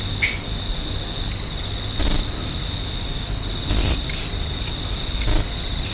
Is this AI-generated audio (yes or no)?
no